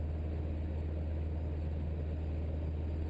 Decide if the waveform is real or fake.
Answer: real